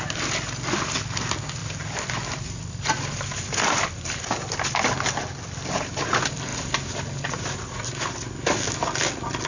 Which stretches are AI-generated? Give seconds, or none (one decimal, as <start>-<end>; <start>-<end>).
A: 1.6-5.2; 6.5-7.9